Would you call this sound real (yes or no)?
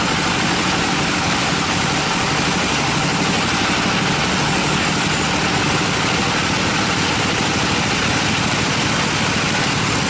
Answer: yes